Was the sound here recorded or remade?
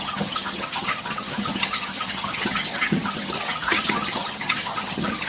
remade